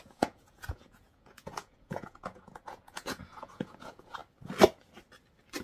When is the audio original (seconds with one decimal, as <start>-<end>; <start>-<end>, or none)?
4.2-5.6